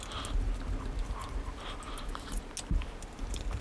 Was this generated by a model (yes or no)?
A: no